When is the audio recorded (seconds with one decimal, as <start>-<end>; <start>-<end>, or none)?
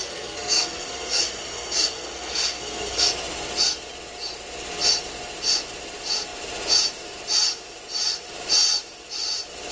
3.1-9.7